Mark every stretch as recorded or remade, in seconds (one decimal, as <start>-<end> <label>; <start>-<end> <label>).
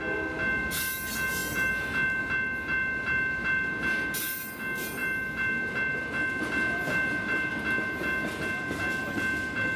0.0-9.8 recorded